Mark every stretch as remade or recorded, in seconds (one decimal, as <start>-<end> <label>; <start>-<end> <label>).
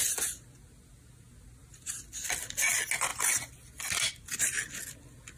0.0-5.4 recorded